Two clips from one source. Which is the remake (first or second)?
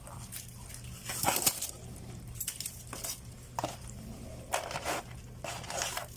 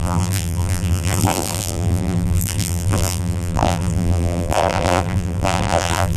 second